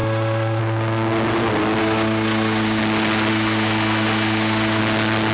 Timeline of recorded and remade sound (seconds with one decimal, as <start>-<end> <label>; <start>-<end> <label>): 0.0-0.6 remade; 0.6-1.8 recorded; 1.8-2.8 remade; 2.8-3.3 recorded; 3.3-4.8 remade; 4.8-5.3 recorded